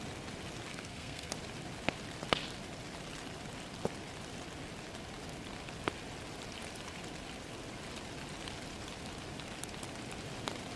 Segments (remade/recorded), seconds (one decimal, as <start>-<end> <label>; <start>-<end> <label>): 0.0-0.7 recorded; 0.7-1.3 remade; 1.3-10.8 recorded